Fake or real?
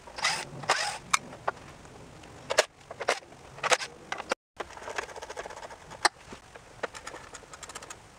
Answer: real